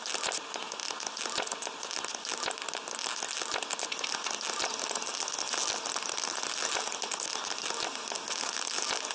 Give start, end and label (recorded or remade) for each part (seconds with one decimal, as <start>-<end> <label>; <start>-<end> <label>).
0.0-9.1 recorded